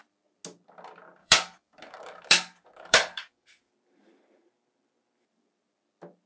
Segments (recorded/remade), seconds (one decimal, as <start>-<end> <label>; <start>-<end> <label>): 0.0-1.2 recorded; 1.2-3.7 remade; 3.7-6.3 recorded

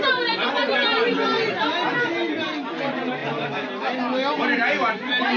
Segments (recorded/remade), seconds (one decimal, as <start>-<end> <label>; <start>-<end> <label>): 0.0-5.4 recorded